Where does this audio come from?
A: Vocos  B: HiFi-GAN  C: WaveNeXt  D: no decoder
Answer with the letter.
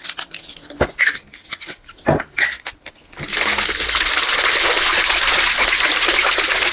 D